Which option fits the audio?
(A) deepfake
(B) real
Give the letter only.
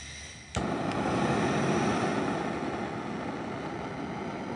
B